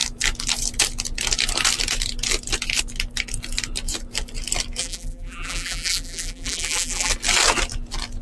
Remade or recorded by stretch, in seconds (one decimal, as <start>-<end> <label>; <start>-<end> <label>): 0.0-4.8 recorded; 4.8-7.1 remade; 7.1-8.2 recorded